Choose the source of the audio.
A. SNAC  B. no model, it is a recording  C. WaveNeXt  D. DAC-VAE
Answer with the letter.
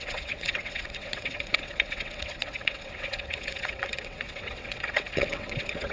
C